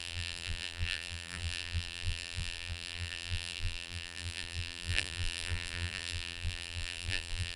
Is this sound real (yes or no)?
no